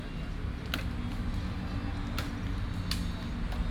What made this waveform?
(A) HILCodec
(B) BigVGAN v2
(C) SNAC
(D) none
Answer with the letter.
D